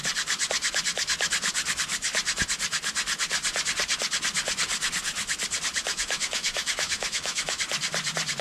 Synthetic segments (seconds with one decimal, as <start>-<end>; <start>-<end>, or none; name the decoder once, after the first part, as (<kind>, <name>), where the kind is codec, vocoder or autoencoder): 5.9-7.6 (autoencoder, DAC-VAE)